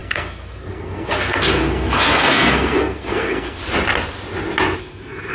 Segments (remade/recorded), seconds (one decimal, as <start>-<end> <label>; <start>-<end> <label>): 0.0-3.6 remade; 3.6-4.8 recorded; 4.8-5.3 remade